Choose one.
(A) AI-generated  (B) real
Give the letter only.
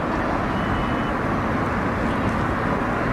B